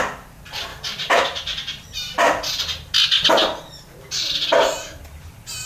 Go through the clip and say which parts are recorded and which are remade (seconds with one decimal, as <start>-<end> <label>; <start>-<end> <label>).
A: 0.0-0.7 recorded; 0.7-1.2 remade; 1.2-3.4 recorded; 3.4-5.0 remade; 5.0-5.7 recorded